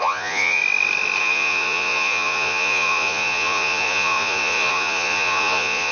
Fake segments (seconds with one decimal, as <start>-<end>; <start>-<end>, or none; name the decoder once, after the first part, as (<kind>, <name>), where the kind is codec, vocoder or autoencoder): 0.0-0.6 (vocoder, Vocos); 1.2-5.9